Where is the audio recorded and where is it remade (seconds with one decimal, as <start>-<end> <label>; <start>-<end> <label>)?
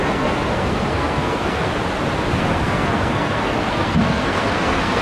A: 0.0-1.7 remade; 1.7-2.3 recorded; 2.3-5.0 remade